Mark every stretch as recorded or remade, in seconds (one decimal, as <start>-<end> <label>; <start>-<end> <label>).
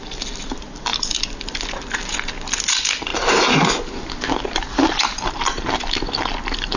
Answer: 0.0-6.8 recorded